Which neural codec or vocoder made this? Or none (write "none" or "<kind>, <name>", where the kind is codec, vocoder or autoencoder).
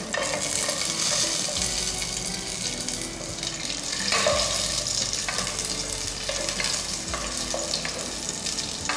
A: none